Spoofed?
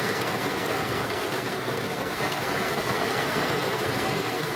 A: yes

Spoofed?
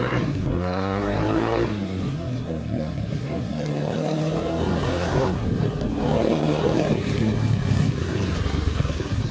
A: yes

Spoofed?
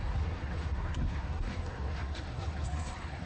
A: yes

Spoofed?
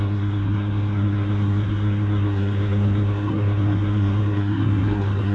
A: yes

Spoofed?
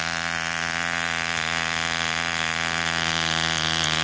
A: no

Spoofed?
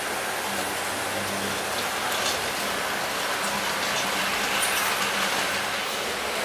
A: no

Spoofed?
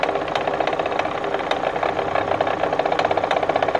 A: no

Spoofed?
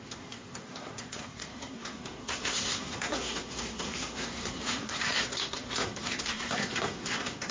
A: yes